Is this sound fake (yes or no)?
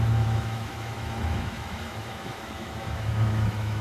yes